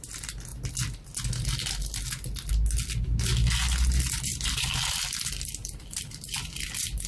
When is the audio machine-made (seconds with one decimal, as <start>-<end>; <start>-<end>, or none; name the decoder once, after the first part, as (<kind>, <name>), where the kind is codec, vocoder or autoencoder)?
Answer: 4.3-7.1 (vocoder, BigVGAN v2)